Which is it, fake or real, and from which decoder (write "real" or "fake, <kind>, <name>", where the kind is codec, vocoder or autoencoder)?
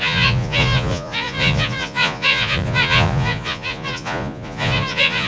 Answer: fake, vocoder, Vocos